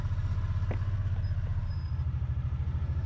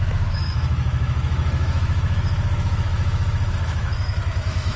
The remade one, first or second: second